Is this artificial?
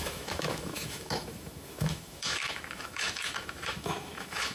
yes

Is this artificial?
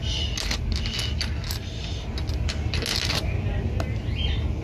no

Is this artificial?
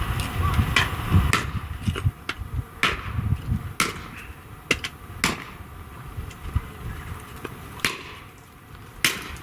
no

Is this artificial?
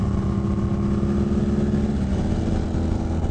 no